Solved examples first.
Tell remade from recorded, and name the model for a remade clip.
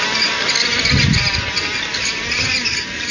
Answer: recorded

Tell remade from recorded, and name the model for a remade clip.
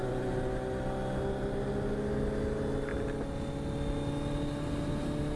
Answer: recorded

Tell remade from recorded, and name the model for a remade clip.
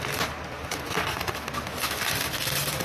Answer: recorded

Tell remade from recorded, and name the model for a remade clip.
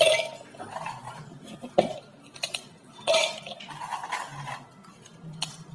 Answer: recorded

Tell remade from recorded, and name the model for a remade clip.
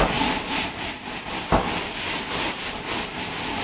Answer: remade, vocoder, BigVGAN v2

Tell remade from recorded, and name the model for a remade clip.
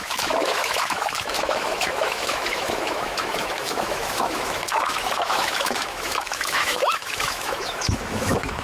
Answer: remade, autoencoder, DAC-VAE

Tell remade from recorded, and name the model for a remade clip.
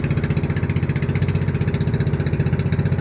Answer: recorded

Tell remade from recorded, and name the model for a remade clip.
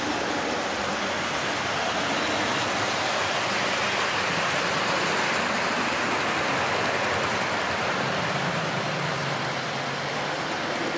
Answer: recorded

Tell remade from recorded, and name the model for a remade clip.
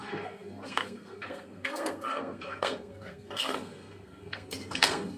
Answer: remade, codec, SNAC